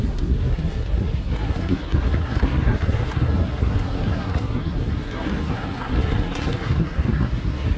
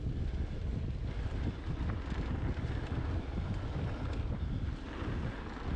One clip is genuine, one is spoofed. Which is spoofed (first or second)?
first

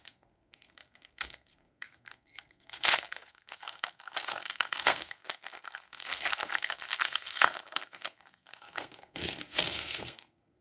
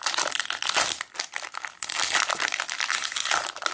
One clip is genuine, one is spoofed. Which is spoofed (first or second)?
first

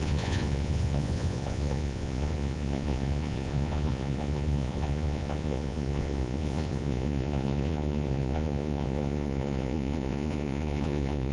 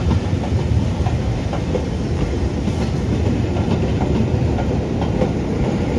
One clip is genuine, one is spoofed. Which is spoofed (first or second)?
first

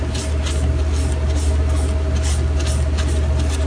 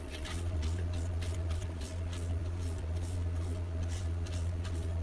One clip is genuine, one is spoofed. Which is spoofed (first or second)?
second